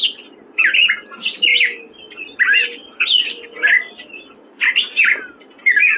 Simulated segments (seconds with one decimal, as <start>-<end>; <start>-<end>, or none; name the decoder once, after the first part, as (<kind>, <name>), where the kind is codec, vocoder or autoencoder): none